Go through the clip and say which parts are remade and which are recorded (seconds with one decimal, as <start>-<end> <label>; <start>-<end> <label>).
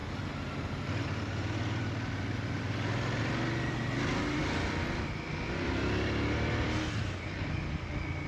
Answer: 0.0-8.3 recorded